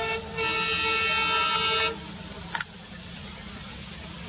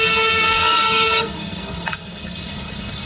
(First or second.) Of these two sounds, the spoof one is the second